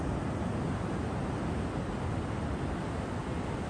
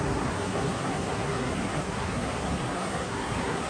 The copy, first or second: second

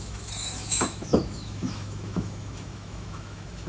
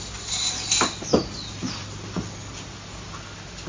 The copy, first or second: first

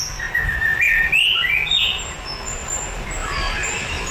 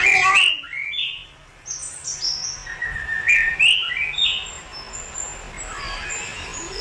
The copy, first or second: first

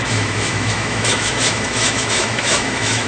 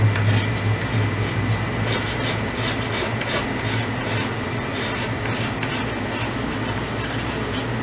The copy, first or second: first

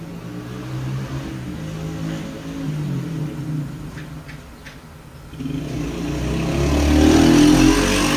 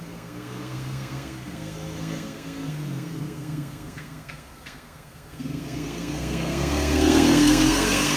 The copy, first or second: second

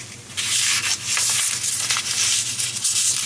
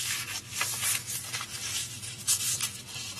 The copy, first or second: second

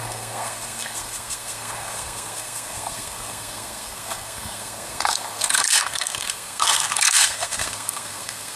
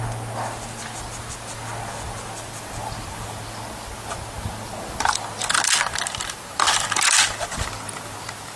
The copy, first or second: first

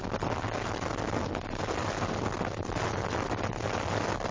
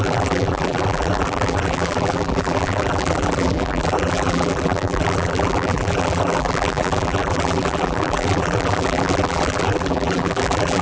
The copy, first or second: second